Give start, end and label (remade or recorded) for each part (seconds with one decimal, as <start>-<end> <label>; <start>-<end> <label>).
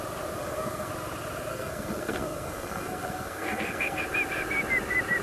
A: 0.0-0.4 recorded; 0.4-0.9 remade; 0.9-1.5 recorded; 1.5-4.0 remade; 4.0-5.2 recorded